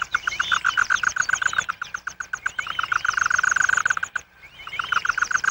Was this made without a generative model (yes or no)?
yes